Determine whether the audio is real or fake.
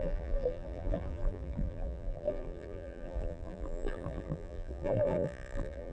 fake